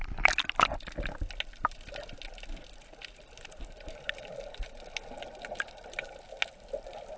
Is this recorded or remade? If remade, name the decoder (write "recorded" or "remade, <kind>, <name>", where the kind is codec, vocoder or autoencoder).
recorded